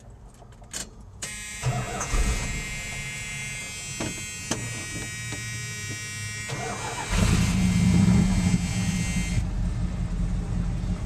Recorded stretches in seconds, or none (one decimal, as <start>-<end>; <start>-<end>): 0.0-0.8; 3.6-11.1